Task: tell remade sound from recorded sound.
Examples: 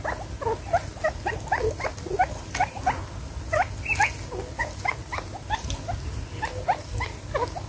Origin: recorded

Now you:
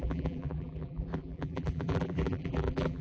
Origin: remade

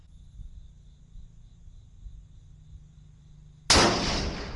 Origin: recorded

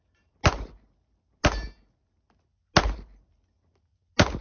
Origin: recorded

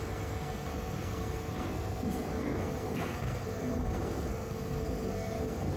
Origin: remade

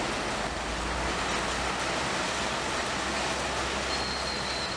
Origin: recorded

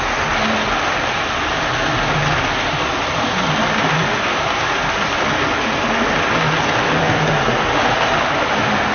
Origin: recorded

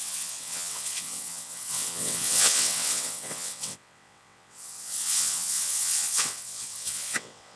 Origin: remade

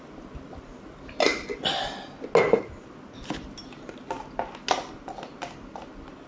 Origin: recorded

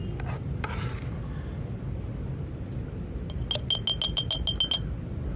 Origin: recorded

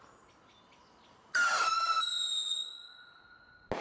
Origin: recorded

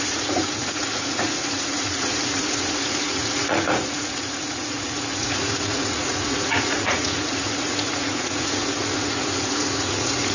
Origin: remade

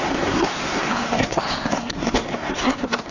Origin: remade